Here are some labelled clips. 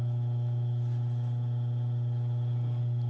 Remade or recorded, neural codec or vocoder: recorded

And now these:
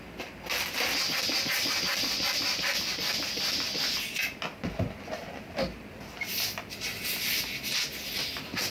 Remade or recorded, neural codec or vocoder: recorded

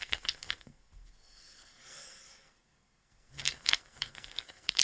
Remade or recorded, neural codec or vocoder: remade, codec, SNAC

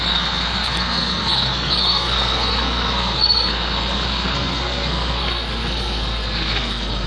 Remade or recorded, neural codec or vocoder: remade, codec, SNAC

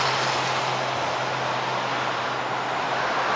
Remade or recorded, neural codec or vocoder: recorded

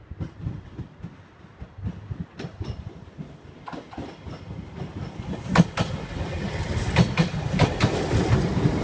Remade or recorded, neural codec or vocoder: recorded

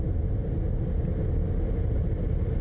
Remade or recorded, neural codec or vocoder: recorded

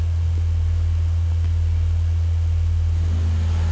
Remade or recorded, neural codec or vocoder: recorded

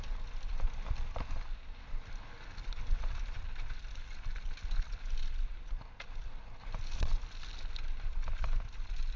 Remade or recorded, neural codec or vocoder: recorded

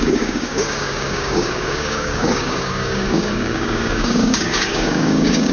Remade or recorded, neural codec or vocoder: remade, codec, DAC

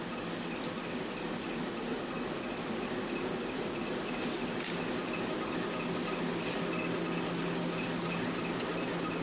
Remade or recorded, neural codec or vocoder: recorded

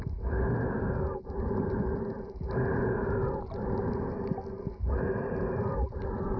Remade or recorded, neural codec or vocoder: recorded